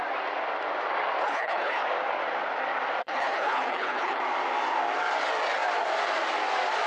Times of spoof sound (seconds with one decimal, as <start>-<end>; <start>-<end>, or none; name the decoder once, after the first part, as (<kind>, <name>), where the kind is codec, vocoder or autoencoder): 1.2-1.8 (codec, HILCodec); 3.0-4.2